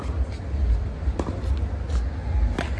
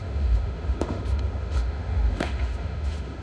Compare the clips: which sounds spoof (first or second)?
second